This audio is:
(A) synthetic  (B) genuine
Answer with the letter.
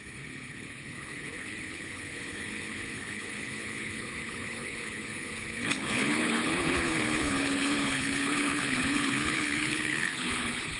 A